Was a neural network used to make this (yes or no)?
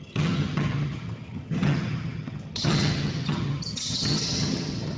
yes